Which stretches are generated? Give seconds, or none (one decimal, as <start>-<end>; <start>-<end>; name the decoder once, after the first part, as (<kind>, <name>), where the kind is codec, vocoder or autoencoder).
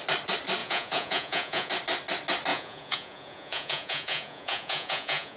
0.6-1.7 (vocoder, Vocos); 2.5-5.4